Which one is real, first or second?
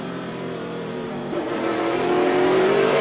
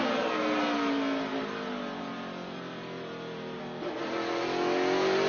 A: second